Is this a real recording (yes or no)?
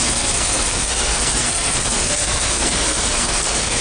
no